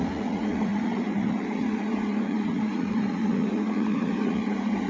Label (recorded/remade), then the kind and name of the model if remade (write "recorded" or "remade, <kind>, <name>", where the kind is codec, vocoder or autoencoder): remade, vocoder, Vocos